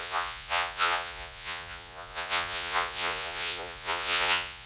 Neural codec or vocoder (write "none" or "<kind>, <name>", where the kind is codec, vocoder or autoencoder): vocoder, Vocos